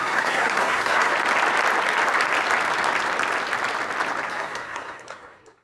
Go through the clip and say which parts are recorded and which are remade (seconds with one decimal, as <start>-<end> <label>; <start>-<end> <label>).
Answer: 0.0-1.1 remade; 1.1-4.3 recorded; 4.3-5.6 remade